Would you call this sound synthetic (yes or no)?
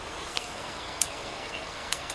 yes